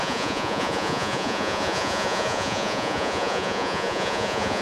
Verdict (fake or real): fake